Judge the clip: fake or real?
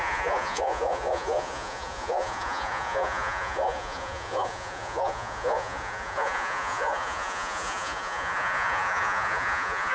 fake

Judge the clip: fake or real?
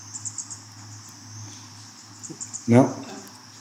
real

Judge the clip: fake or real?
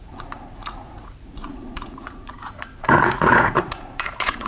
fake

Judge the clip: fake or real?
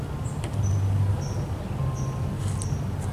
real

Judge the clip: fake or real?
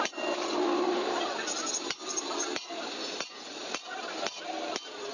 real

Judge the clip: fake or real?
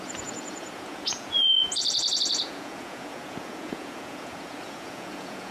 fake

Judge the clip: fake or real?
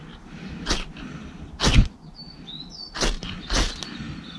real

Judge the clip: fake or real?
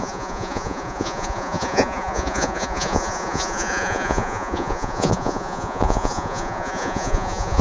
fake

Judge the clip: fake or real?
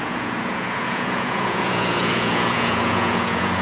fake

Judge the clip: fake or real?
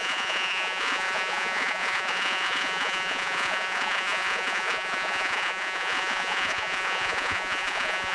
fake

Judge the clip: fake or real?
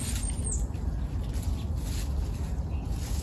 real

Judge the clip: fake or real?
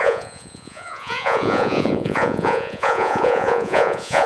fake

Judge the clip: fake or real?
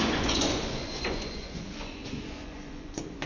fake